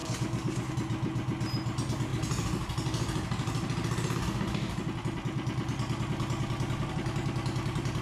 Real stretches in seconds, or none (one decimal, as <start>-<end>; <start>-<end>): 0.7-8.0